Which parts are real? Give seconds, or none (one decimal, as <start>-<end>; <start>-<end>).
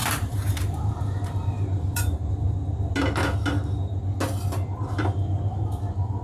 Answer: 2.3-6.2